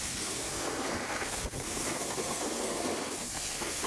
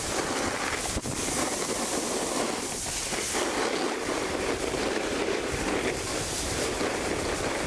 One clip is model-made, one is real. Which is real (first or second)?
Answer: second